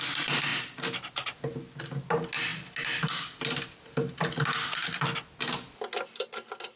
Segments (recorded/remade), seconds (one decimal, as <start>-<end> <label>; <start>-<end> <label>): 0.0-6.8 recorded